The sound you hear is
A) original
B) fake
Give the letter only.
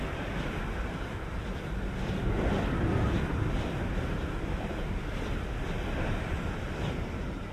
B